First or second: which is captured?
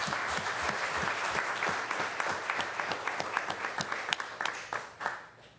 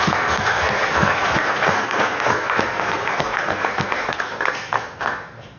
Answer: first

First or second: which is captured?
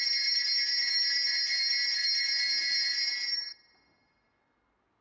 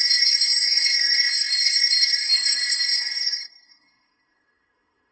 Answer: first